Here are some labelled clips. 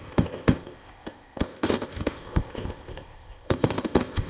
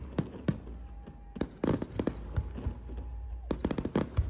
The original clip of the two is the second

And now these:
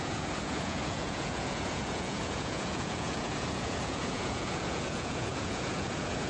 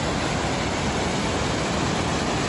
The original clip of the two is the second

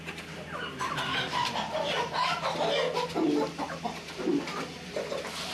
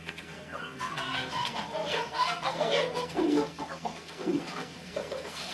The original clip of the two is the first